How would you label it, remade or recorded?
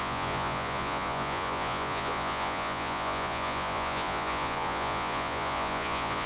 remade